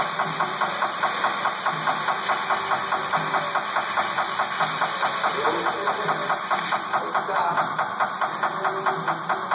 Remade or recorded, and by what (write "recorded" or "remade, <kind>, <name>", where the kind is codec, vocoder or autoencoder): recorded